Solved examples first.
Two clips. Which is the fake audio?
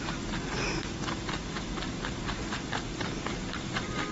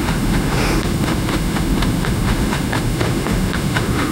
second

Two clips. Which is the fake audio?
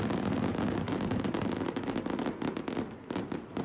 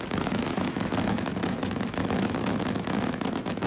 second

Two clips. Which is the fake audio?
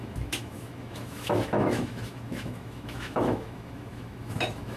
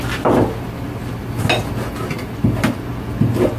first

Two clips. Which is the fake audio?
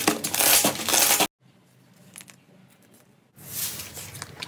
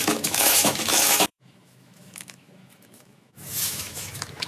second